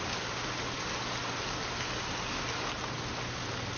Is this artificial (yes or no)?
no